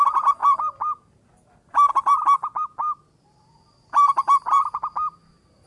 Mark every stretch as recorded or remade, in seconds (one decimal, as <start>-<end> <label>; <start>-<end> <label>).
0.0-5.7 recorded